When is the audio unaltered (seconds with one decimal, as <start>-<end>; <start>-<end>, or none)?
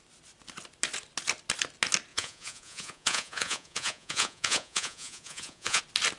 0.0-2.1; 5.8-6.2